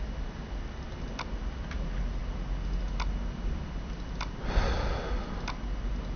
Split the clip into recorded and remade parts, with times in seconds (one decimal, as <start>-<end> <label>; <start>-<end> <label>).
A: 0.0-6.2 recorded